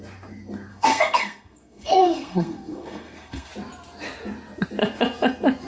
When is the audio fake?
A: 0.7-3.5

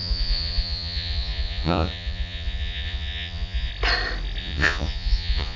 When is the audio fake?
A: 0.0-3.7; 4.4-5.6

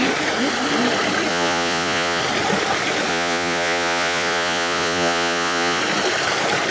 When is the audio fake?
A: 1.3-2.2; 3.1-5.8

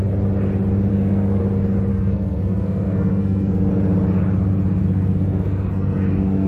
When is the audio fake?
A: 0.9-1.4; 1.9-3.7; 4.8-6.5

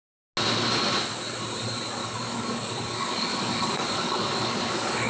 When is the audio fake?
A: 2.0-5.1